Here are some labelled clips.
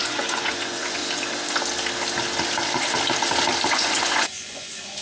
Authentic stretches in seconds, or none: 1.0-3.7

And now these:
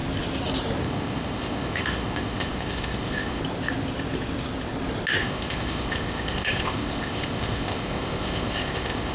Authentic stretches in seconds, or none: 0.0-0.8; 3.4-5.2